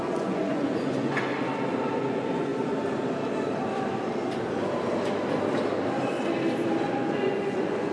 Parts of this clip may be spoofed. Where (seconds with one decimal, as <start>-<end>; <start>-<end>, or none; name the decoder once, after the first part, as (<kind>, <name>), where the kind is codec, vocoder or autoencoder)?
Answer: 0.0-1.3 (vocoder, Vocos); 2.0-2.5; 6.8-7.9